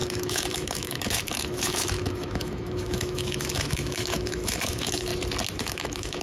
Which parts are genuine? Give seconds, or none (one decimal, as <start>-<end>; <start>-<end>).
5.1-5.6